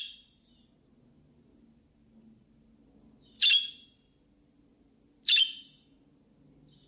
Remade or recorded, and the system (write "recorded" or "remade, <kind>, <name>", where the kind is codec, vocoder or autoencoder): recorded